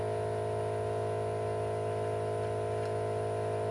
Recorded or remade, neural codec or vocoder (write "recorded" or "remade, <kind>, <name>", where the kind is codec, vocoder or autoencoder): recorded